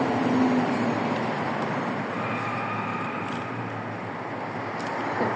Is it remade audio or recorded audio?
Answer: recorded